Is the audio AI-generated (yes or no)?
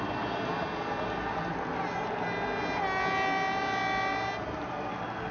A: no